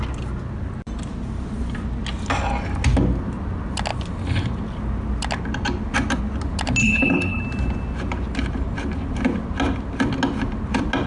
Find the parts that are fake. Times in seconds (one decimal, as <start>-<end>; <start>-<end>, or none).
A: 6.8-7.4